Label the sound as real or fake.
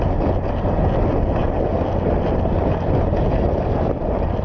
real